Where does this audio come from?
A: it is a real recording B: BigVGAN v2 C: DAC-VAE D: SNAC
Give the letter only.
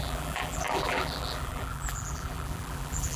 B